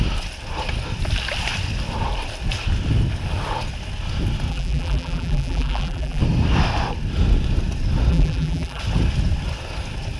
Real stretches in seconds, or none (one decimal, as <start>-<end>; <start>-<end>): 0.0-4.5; 6.2-8.1; 8.8-10.2